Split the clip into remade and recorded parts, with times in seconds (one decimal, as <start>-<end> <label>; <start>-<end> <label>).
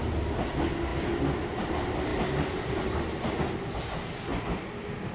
0.0-5.1 recorded